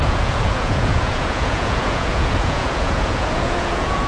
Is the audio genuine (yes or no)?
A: no